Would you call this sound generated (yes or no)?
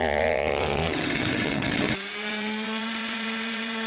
yes